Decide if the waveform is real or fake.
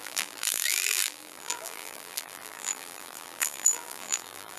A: fake